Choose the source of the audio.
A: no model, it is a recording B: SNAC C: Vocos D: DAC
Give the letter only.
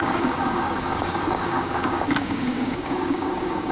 D